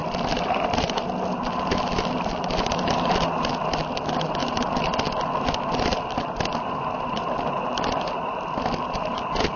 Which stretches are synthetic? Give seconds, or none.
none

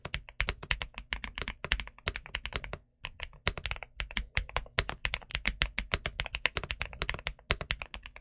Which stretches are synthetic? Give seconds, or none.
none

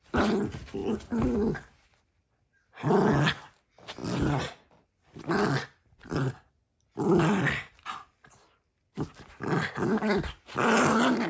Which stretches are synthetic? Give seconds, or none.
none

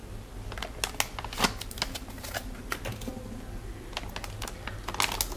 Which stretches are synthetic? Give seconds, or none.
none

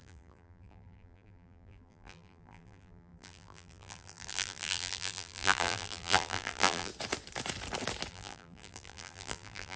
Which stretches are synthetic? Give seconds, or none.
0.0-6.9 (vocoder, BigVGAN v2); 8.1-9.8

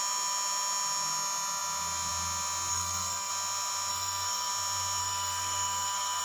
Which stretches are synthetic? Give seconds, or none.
2.7-3.3 (codec, SNAC); 3.9-4.5; 5.0-6.2

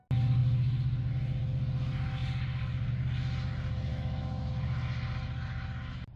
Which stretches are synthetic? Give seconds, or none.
3.9-4.5 (autoencoder, DAC-VAE)

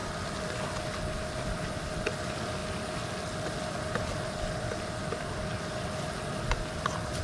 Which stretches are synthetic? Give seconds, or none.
none